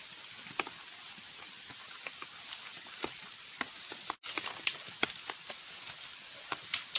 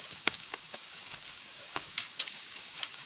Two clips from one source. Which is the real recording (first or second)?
first